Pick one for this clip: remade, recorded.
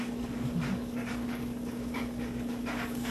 remade